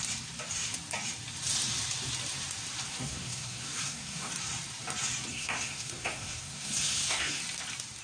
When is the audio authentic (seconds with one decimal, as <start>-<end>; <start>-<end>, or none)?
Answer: 0.0-2.9; 4.3-5.3; 7.4-8.0